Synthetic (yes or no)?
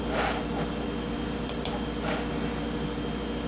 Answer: no